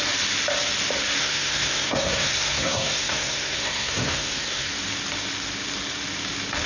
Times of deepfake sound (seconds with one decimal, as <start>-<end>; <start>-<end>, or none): 1.2-4.7